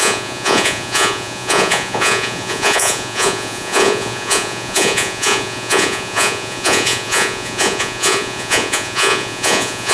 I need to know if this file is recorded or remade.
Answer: remade